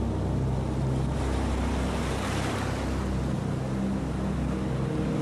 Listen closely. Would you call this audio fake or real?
real